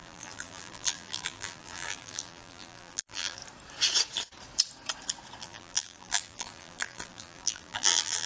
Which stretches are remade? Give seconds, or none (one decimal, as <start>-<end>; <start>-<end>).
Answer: 0.0-3.4; 5.4-8.3